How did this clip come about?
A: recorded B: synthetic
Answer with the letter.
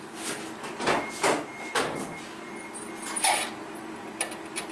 A